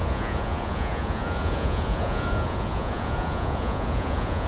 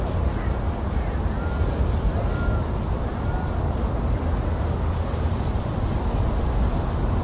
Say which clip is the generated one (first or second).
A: first